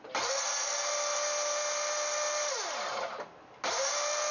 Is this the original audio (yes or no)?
yes